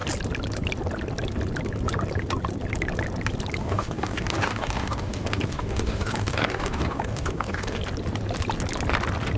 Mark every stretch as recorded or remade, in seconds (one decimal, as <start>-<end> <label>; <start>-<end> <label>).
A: 0.0-3.6 recorded; 3.6-7.8 remade; 7.8-9.4 recorded